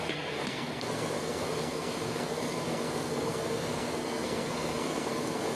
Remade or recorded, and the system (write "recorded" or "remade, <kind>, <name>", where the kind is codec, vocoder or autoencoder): remade, codec, SNAC